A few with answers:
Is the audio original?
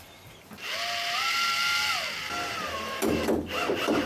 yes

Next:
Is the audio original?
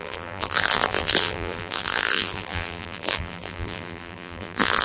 no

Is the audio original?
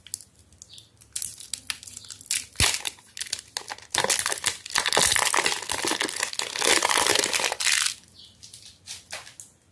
yes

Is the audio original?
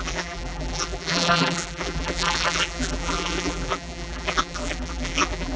no